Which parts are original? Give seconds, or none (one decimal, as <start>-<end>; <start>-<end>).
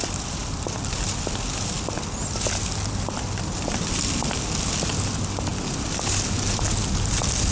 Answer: 0.0-7.5